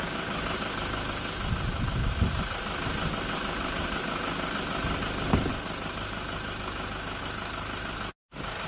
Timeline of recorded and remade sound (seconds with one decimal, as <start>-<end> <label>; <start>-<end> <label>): 0.0-8.7 recorded